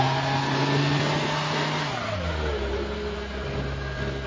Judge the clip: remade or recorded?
recorded